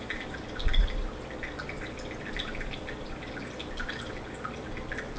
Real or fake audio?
real